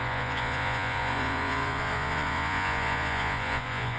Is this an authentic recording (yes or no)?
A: no